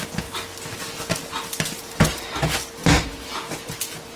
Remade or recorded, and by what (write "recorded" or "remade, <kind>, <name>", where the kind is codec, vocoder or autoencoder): recorded